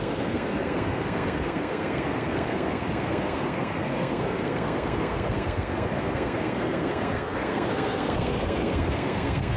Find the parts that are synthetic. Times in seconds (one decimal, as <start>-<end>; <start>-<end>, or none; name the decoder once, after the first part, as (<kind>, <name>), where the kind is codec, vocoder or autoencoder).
0.0-9.6 (codec, SNAC)